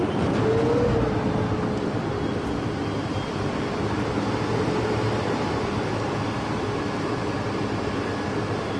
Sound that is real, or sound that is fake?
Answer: real